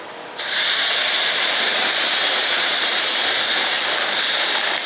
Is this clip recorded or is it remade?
remade